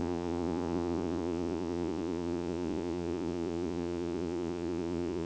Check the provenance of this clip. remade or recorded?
remade